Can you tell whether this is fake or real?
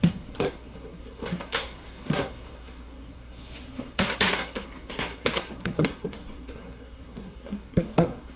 fake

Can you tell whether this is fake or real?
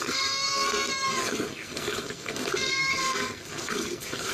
fake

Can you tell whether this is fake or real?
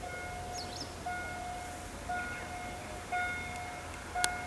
real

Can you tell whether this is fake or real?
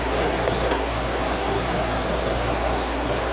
fake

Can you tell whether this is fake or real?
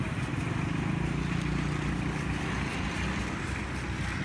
real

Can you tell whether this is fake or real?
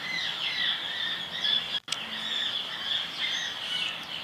real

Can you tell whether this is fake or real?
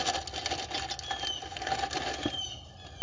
real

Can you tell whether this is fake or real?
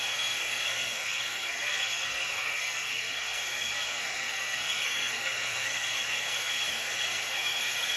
fake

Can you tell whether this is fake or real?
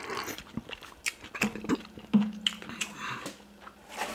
real